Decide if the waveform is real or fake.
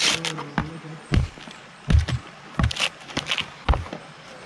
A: real